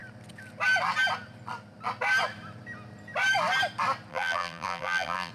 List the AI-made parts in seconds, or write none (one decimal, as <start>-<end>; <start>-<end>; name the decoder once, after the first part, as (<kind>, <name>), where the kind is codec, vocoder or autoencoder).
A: 4.1-5.3 (vocoder, BigVGAN v2)